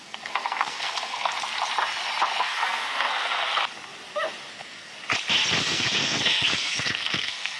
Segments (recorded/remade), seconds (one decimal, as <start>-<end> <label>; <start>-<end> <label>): 0.0-1.3 remade; 1.3-2.4 recorded; 2.4-3.5 remade; 3.5-4.5 recorded; 4.5-4.9 remade; 4.9-5.6 recorded; 5.6-7.6 remade